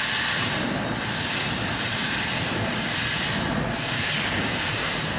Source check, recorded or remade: recorded